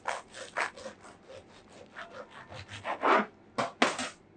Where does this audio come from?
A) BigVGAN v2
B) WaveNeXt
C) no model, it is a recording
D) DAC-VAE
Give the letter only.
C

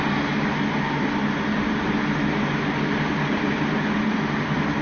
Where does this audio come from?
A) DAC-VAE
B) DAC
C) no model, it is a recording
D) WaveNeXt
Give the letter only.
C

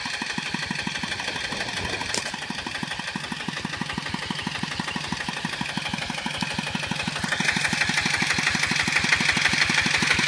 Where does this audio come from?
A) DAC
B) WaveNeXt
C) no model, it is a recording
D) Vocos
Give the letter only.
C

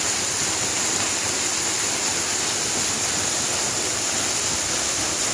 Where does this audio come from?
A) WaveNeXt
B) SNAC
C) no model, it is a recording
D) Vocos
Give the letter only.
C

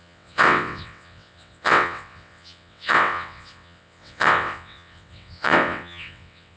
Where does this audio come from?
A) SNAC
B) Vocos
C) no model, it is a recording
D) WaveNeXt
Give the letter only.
D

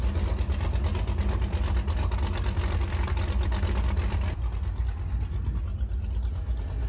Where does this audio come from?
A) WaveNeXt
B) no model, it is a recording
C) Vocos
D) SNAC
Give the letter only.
B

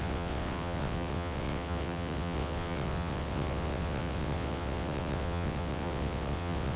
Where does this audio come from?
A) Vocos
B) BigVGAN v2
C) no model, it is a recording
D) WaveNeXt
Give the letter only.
D